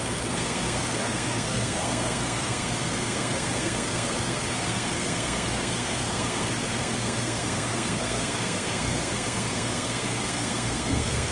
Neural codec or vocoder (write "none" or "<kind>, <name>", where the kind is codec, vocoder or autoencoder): codec, SNAC